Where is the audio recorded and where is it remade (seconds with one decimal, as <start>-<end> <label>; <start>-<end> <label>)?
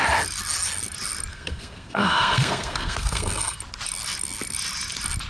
0.0-1.3 recorded; 1.3-3.6 remade; 3.6-5.3 recorded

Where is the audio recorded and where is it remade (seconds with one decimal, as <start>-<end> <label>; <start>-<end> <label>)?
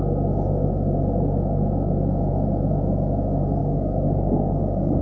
0.0-3.6 recorded; 3.6-5.0 remade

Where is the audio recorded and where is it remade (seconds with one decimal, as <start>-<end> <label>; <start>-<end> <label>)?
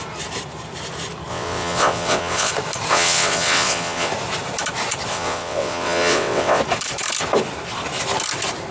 0.0-1.3 recorded; 1.3-2.5 remade; 2.5-2.9 recorded; 2.9-4.1 remade; 4.1-5.1 recorded; 5.1-6.6 remade; 6.6-8.7 recorded